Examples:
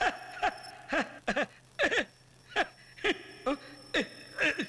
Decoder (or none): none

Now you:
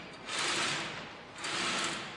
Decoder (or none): none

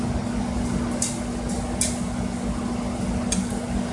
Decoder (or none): none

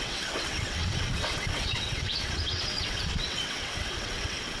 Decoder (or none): vocoder, WaveNeXt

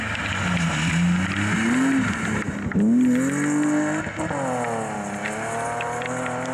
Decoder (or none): none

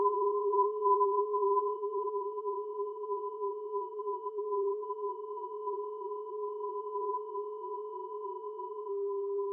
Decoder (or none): codec, SNAC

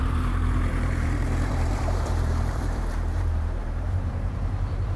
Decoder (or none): vocoder, BigVGAN v2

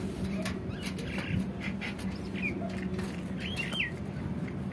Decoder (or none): none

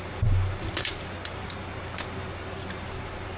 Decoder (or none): none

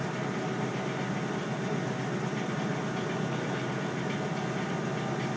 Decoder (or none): none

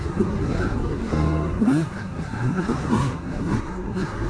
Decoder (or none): codec, SNAC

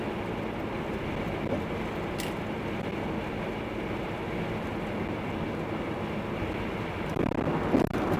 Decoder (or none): none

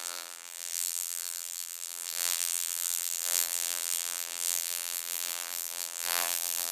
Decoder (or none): vocoder, BigVGAN v2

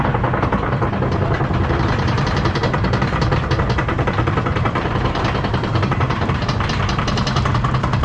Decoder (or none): vocoder, BigVGAN v2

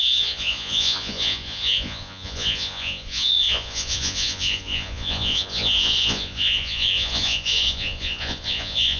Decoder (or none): vocoder, Vocos